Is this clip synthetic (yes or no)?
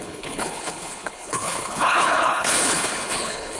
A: yes